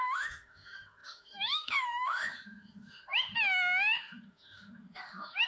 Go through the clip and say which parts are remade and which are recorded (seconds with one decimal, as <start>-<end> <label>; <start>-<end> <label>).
0.0-5.5 remade